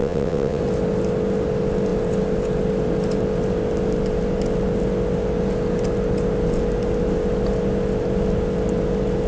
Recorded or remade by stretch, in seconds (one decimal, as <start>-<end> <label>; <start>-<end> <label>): 0.0-0.6 remade; 0.6-9.3 recorded